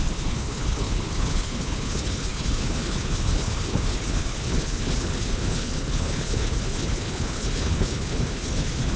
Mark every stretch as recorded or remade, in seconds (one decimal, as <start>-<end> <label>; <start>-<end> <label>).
0.0-9.0 remade